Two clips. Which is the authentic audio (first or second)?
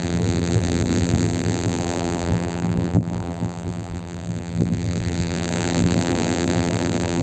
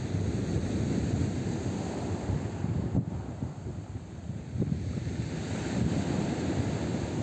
second